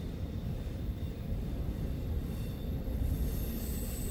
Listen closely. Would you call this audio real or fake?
fake